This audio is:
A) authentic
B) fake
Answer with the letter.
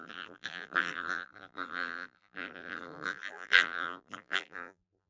B